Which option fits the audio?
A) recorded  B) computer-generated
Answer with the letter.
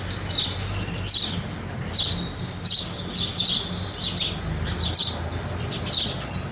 A